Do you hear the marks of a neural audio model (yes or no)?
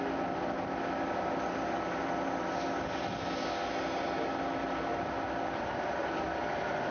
no